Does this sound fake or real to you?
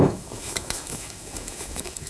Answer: fake